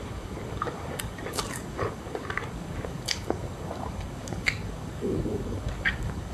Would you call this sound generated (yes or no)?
yes